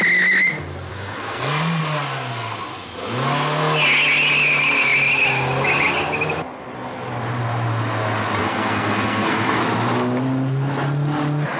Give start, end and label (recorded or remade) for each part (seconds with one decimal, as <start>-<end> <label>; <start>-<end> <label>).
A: 0.0-0.9 recorded; 0.9-1.8 remade; 1.8-8.4 recorded; 8.4-9.6 remade; 9.6-11.6 recorded